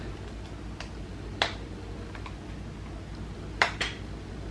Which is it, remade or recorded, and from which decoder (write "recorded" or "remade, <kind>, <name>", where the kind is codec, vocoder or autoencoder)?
recorded